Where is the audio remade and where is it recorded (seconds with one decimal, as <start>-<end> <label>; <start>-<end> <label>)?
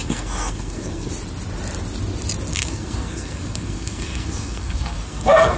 0.0-1.1 remade; 1.1-2.5 recorded; 2.5-5.6 remade